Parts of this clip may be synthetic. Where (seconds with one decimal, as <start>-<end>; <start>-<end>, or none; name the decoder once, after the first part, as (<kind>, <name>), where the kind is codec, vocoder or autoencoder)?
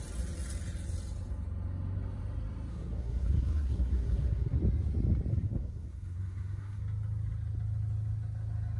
2.7-4.6 (codec, SNAC); 5.3-6.8